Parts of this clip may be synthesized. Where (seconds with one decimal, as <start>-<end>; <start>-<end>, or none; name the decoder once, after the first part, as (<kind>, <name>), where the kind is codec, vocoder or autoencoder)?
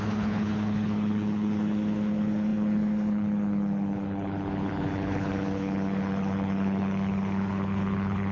0.0-8.3 (codec, HILCodec)